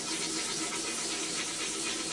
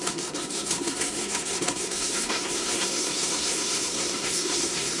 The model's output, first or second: second